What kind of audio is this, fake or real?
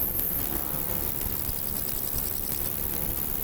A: real